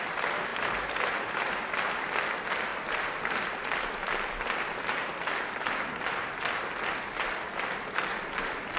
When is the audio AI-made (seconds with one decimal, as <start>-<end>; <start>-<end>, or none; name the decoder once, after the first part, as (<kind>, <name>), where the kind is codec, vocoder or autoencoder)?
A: 0.5-2.2 (vocoder, BigVGAN v2)